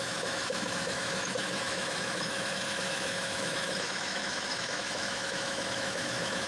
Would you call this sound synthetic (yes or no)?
yes